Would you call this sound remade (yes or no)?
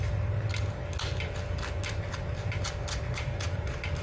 no